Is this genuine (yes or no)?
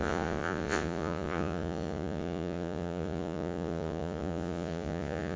no